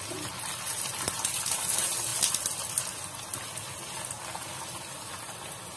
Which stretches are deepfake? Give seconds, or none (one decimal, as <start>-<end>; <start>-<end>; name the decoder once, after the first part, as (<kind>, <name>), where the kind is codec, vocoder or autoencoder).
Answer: none